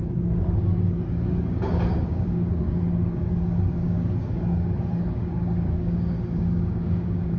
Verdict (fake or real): fake